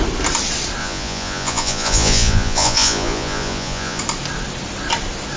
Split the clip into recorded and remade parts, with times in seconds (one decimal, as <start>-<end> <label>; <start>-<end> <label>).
0.0-0.8 recorded; 0.8-4.0 remade; 4.0-5.4 recorded